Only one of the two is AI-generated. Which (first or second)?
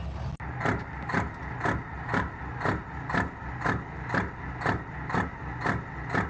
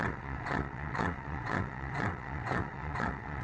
second